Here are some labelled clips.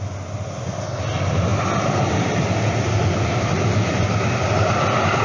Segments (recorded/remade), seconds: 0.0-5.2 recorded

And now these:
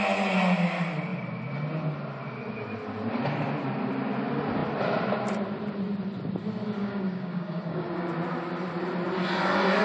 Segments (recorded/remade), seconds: 0.0-6.8 recorded; 6.8-8.1 remade; 8.1-9.8 recorded

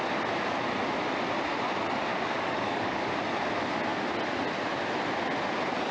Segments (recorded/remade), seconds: 0.0-2.1 recorded; 2.1-3.1 remade; 3.1-5.9 recorded

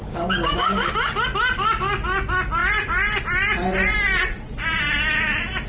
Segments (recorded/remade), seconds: 0.0-0.9 remade; 0.9-5.7 recorded

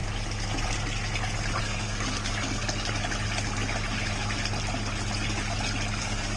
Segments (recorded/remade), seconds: 0.0-1.6 recorded; 1.6-2.6 remade; 2.6-6.0 recorded; 6.0-6.4 remade

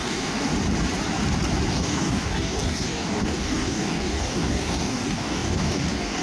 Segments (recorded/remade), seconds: 0.0-0.5 remade; 0.5-1.7 recorded; 1.7-6.2 remade